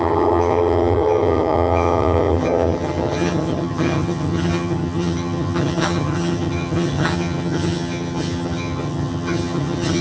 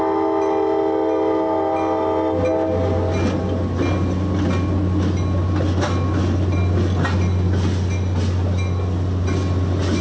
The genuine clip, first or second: second